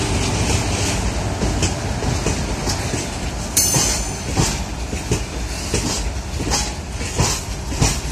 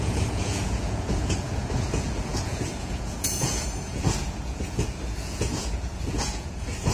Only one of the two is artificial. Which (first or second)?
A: second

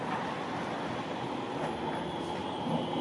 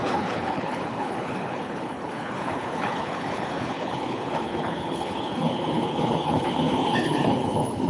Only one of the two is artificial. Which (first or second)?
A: second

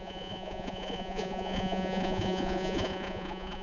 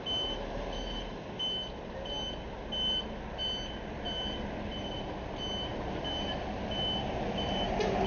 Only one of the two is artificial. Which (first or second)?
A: first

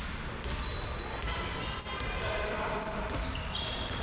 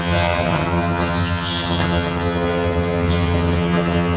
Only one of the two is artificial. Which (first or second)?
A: second